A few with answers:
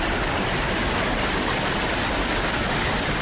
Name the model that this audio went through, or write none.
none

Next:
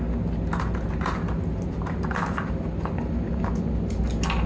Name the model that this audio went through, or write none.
none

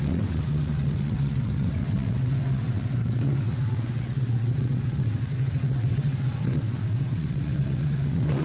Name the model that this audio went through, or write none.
vocoder, WaveNeXt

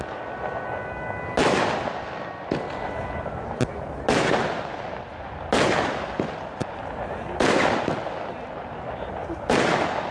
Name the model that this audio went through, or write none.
none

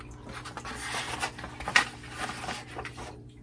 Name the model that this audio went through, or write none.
none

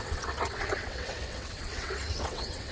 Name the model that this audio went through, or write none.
vocoder, WaveNeXt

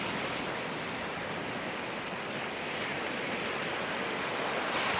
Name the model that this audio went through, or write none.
none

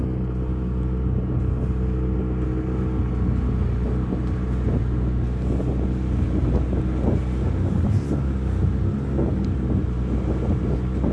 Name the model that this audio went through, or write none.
none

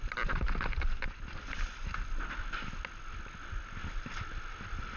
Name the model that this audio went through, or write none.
none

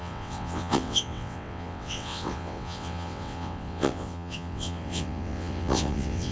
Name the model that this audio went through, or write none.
vocoder, WaveNeXt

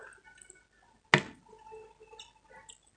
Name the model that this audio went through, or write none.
none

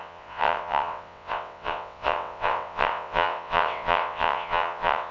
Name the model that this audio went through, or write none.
vocoder, WaveNeXt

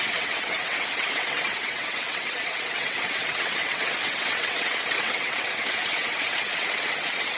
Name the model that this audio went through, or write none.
vocoder, WaveNeXt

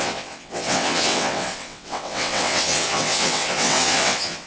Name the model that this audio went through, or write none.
vocoder, WaveNeXt